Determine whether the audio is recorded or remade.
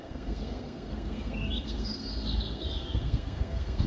remade